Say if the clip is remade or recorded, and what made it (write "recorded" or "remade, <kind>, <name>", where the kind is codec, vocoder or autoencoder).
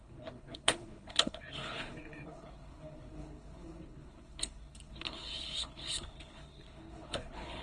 remade, codec, HILCodec